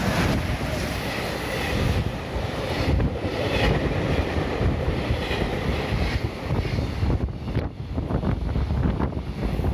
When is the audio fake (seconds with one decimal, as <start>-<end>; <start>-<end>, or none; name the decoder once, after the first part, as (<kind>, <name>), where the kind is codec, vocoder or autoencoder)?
2.1-5.9 (vocoder, BigVGAN v2)